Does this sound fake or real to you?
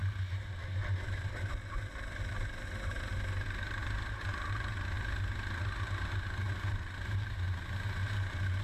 real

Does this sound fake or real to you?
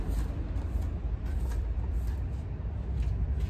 real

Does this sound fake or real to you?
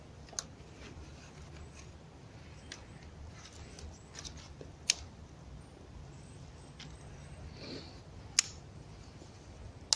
real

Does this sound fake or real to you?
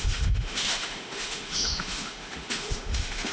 fake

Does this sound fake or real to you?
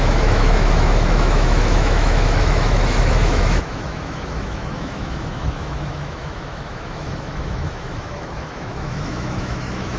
fake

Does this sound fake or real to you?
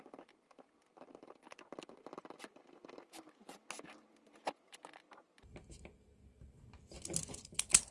real